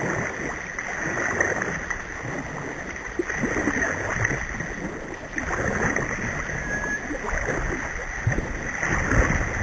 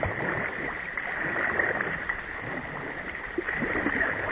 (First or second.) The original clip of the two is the first